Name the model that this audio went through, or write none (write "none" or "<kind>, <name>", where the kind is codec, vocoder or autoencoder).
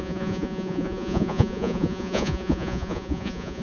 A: vocoder, Vocos